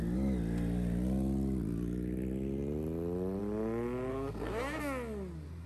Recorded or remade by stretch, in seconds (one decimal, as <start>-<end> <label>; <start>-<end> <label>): 0.0-4.1 recorded; 4.1-4.8 remade; 4.8-5.7 recorded